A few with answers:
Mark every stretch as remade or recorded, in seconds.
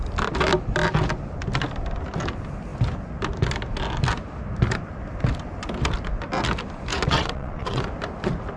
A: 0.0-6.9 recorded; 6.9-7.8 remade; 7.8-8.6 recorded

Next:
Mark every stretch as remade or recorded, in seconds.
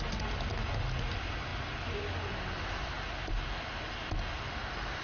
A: 0.0-5.0 recorded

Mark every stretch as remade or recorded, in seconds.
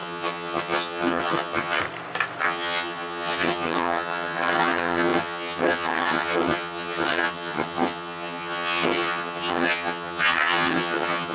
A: 0.0-1.8 remade; 1.8-2.4 recorded; 2.4-11.3 remade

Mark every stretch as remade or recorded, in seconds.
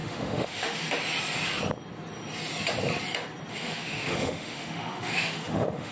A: 0.0-0.8 remade; 0.8-3.5 recorded; 3.5-5.9 remade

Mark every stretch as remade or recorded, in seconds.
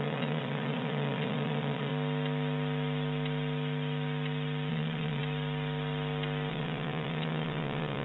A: 0.0-1.9 remade; 1.9-4.7 recorded; 4.7-5.2 remade; 5.2-6.5 recorded; 6.5-8.0 remade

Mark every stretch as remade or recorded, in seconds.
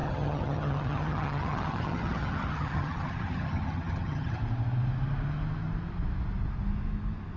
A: 0.0-4.4 remade; 4.4-7.4 recorded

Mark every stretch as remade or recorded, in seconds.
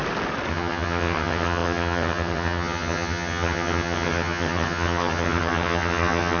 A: 0.0-0.5 recorded; 0.5-6.4 remade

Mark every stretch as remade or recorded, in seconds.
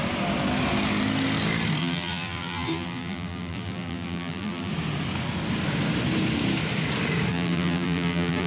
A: 0.0-1.8 recorded; 1.8-4.7 remade; 4.7-7.3 recorded; 7.3-8.5 remade